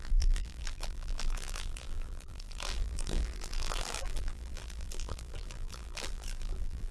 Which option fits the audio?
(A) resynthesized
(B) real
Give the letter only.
A